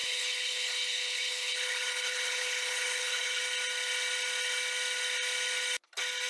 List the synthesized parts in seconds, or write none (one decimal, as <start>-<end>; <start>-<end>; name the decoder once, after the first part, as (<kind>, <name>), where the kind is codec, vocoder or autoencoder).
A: 0.0-3.4 (codec, HILCodec)

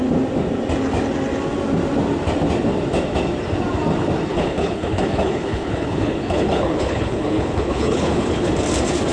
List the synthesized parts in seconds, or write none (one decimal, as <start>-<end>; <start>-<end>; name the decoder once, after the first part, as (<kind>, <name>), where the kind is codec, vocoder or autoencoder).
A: 4.3-8.5 (codec, HILCodec)